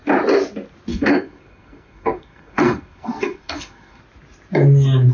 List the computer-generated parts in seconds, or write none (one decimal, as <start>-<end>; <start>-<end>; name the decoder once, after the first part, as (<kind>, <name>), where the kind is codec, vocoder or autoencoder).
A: 0.9-4.0 (codec, SNAC)